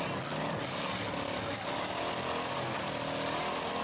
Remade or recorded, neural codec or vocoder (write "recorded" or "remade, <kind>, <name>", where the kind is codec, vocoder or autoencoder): recorded